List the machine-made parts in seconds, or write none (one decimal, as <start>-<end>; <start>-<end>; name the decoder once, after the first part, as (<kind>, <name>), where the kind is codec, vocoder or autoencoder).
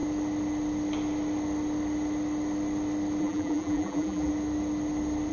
3.2-4.3 (vocoder, BigVGAN v2)